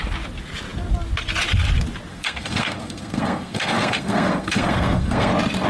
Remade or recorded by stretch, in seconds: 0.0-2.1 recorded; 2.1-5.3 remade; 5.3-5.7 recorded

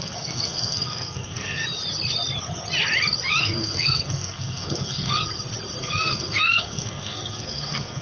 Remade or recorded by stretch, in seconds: 0.0-1.6 remade; 1.6-3.4 recorded; 3.4-5.2 remade; 5.2-5.8 recorded; 5.8-8.0 remade

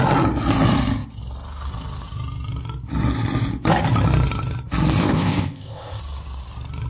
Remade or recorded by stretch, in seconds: 0.0-5.0 recorded; 5.0-6.0 remade; 6.0-6.9 recorded

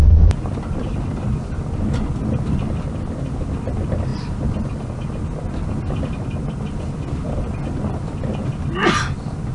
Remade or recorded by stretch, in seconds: 0.0-9.5 recorded

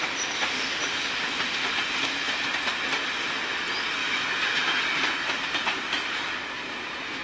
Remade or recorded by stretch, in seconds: 0.0-4.0 recorded; 4.0-4.8 remade; 4.8-7.2 recorded